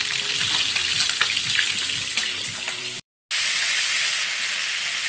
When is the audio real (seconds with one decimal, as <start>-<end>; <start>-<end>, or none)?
0.9-1.8; 3.1-4.2

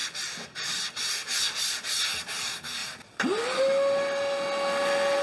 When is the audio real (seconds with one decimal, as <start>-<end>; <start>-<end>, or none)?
0.0-5.2

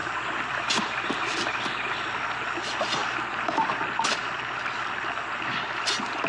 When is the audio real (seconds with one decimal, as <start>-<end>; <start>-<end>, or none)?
0.0-6.3

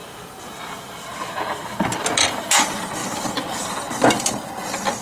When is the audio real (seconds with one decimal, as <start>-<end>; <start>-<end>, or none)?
2.5-3.0; 3.7-5.0

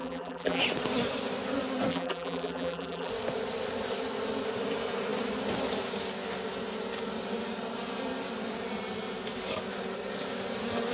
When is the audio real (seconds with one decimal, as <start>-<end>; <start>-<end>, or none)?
0.6-1.9; 3.1-10.9

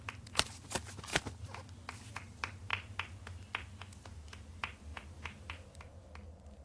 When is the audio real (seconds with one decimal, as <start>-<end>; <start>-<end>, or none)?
2.7-4.0

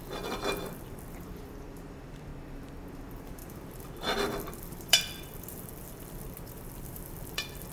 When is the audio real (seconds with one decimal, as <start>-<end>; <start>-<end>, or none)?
2.3-2.9

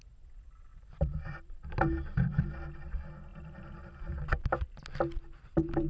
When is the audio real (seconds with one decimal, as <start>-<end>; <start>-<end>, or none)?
0.0-0.7; 2.4-3.3; 4.2-5.9